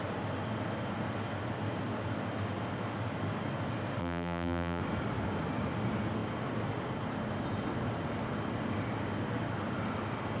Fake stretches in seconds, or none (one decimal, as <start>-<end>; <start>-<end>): 4.0-4.8